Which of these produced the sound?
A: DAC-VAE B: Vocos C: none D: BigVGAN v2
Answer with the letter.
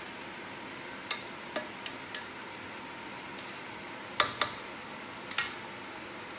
C